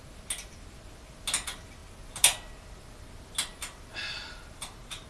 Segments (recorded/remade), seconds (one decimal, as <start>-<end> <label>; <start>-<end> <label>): 0.0-5.1 recorded